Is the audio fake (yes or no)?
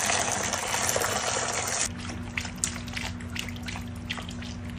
no